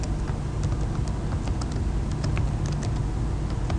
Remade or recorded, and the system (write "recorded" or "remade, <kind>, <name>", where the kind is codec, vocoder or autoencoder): recorded